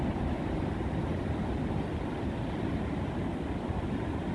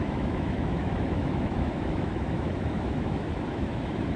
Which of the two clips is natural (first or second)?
first